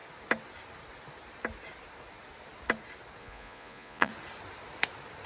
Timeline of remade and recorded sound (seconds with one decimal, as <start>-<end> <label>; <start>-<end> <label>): 0.0-3.2 recorded; 3.2-4.1 remade; 4.1-5.3 recorded